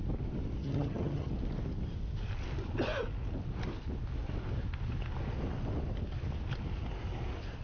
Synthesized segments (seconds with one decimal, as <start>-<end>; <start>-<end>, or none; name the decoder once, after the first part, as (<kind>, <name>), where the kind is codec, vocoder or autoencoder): 0.6-1.3 (vocoder, HiFi-GAN)